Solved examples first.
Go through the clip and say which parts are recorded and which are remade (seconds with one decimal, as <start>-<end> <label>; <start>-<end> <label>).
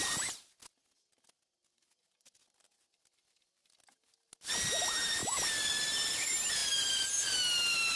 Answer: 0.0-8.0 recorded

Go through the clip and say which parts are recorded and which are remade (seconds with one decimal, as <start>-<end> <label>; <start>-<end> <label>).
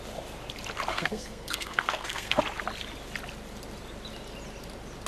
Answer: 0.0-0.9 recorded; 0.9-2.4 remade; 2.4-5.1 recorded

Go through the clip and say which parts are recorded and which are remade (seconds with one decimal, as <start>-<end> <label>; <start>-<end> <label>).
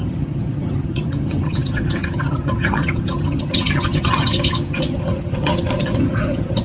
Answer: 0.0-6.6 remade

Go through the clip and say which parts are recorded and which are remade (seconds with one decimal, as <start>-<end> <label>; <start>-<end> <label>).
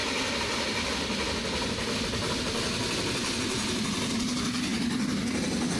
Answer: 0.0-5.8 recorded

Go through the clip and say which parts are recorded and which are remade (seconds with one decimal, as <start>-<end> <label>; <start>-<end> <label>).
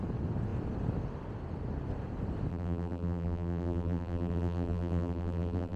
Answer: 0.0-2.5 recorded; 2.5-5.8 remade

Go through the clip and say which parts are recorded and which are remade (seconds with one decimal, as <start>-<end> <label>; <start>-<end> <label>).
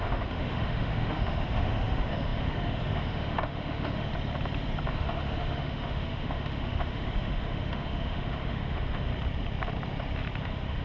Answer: 0.0-4.1 remade; 4.1-4.9 recorded; 4.9-9.1 remade; 9.1-10.4 recorded; 10.4-10.8 remade